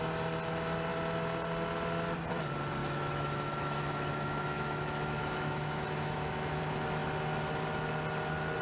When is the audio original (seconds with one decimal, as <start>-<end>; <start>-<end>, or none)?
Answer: 0.0-2.8; 6.6-8.6